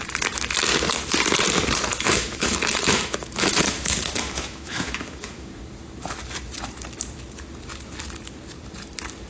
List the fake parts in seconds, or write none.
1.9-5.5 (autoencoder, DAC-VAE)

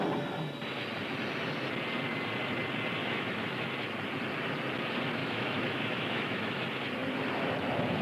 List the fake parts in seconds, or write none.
3.0-3.7 (autoencoder, DAC-VAE); 5.2-6.6

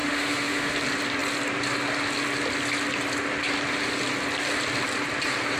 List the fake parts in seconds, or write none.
0.0-0.7 (autoencoder, DAC-VAE)

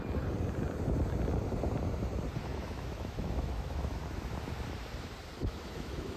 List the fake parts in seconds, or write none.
2.5-4.2 (autoencoder, DAC-VAE); 5.4-6.2